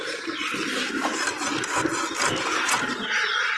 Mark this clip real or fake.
real